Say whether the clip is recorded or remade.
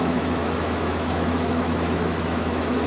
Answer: remade